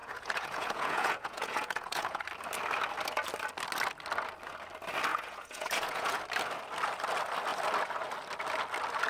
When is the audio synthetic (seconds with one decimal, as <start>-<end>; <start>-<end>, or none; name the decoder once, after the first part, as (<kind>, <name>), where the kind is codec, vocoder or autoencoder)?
0.0-2.2 (vocoder, Vocos); 5.1-6.2